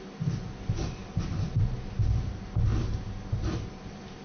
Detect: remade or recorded recorded